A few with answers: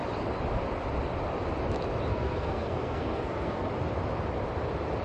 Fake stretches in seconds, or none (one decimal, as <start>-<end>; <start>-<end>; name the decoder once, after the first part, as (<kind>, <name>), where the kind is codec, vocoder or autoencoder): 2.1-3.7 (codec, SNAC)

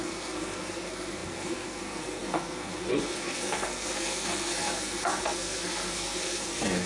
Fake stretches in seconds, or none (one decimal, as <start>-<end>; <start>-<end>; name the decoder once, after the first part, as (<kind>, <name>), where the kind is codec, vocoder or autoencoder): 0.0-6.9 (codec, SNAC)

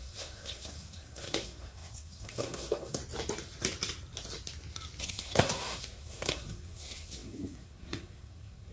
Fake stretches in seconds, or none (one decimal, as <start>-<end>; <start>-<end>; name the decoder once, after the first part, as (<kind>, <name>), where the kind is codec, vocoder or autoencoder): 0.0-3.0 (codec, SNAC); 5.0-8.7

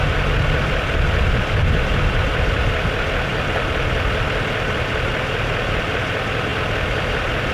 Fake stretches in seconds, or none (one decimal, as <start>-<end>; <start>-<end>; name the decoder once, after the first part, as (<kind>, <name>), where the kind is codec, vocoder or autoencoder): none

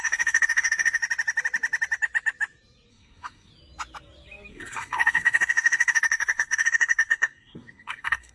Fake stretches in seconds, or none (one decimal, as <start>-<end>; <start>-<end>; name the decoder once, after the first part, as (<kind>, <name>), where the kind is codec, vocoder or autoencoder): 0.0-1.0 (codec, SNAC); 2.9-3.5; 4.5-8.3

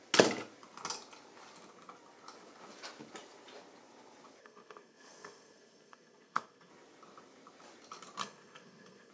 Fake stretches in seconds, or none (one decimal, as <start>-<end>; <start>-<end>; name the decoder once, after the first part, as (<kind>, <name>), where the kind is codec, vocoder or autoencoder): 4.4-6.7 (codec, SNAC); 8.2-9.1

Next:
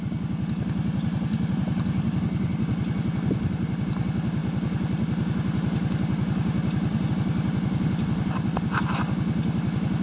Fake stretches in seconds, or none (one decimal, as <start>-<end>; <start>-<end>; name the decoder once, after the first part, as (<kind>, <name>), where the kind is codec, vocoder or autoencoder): none

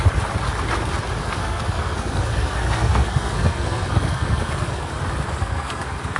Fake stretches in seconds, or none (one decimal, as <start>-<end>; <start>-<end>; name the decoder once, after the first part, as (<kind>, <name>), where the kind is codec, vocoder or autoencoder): 1.2-4.9 (codec, SNAC); 5.4-6.2